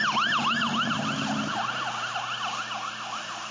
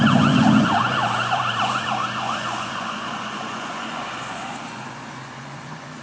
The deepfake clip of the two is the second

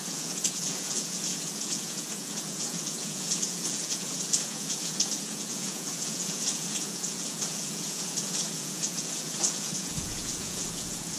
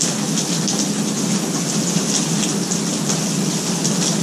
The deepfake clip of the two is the first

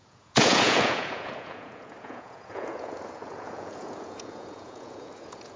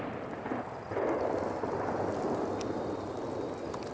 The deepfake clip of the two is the first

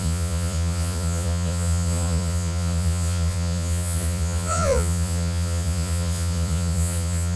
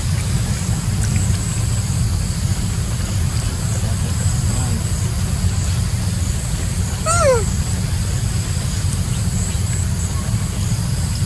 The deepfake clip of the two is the first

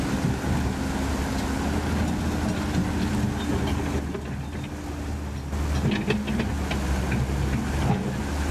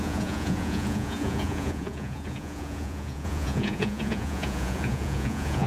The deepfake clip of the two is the second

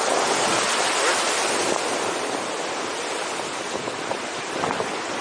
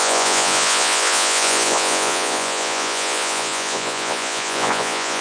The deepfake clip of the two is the second